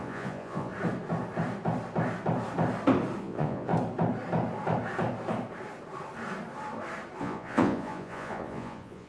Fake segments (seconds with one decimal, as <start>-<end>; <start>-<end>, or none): 0.0-0.7; 3.2-3.7; 7.2-9.1